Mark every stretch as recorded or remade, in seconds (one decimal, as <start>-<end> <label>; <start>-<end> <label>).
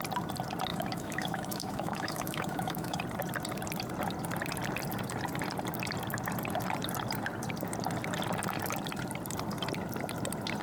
0.0-0.7 recorded; 0.7-3.0 remade; 3.0-10.6 recorded